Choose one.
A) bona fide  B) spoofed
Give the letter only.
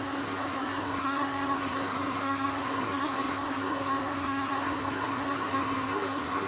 B